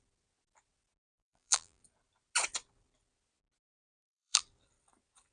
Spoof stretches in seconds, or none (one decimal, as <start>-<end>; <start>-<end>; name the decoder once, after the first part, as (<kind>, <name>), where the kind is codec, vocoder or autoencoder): 1.1-1.8 (vocoder, BigVGAN v2); 3.7-4.4